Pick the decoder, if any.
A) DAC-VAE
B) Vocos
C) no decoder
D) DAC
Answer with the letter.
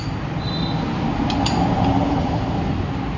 C